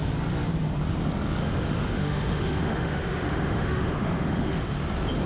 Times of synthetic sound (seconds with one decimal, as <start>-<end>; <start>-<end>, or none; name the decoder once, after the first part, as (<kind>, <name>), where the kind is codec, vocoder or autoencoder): 1.4-4.6 (autoencoder, DAC-VAE)